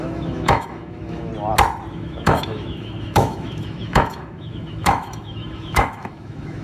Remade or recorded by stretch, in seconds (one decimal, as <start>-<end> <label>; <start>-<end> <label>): 0.0-1.3 remade; 1.3-1.9 recorded; 1.9-6.6 remade